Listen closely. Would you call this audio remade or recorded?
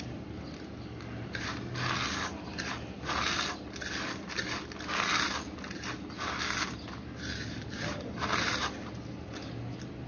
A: recorded